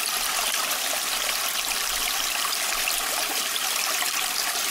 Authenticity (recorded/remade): recorded